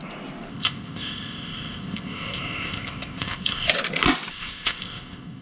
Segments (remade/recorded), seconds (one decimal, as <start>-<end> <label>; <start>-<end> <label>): 0.0-0.5 recorded; 0.5-3.7 remade; 3.7-4.3 recorded; 4.3-5.4 remade